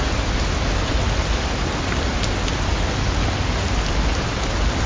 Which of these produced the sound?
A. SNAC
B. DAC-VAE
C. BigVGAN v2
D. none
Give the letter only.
D